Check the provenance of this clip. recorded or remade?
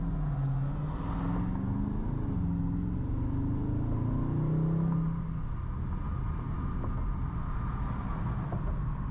recorded